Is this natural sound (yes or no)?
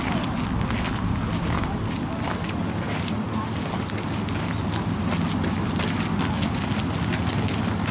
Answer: yes